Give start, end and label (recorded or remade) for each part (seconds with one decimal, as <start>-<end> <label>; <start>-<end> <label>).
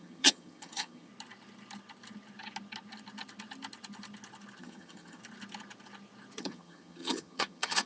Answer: 0.0-1.1 remade; 1.1-4.6 recorded; 4.6-5.2 remade; 5.2-6.4 recorded; 6.4-7.9 remade